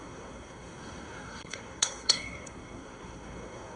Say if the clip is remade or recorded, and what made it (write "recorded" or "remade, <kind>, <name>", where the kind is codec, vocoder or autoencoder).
remade, codec, SNAC